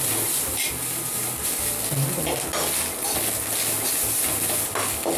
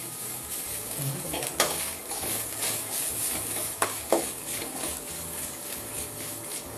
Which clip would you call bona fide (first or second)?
first